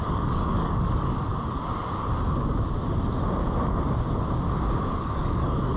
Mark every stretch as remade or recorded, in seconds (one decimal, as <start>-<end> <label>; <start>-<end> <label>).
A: 0.0-1.3 remade; 1.3-4.8 recorded; 4.8-5.8 remade